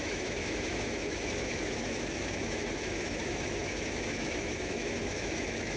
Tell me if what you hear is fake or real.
fake